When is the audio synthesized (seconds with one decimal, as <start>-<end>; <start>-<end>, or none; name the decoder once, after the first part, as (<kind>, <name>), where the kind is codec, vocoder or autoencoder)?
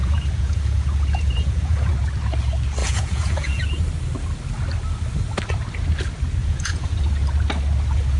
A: 0.0-1.9 (vocoder, Vocos); 2.8-3.6; 6.4-7.1